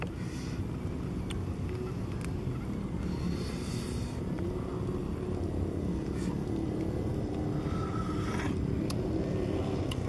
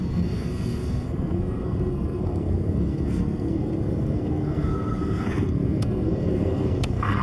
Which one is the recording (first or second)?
first